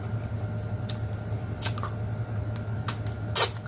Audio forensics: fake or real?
real